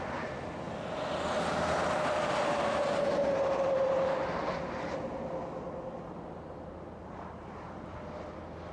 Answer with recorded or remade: recorded